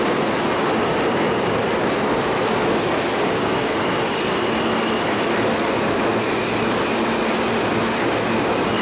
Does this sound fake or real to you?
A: real